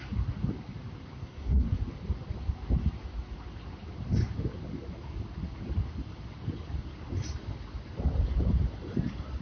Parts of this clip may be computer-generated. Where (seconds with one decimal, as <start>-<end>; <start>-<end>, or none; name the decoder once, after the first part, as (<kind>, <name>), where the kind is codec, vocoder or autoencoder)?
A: 1.2-1.8 (codec, SNAC)